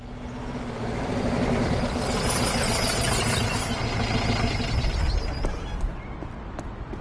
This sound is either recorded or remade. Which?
recorded